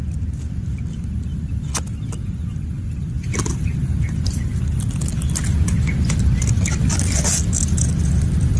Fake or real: real